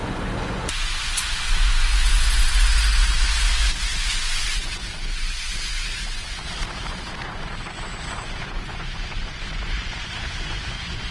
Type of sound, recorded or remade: remade